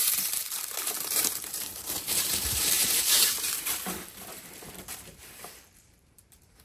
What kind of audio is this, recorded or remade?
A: remade